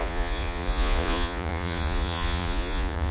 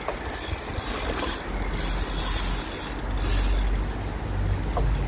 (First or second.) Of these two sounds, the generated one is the first